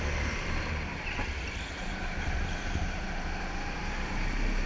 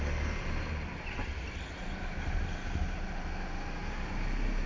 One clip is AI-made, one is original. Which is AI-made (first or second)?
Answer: first